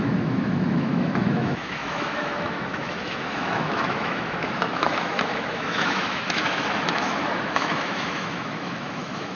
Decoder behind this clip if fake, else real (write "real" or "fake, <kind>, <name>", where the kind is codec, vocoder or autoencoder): fake, autoencoder, DAC-VAE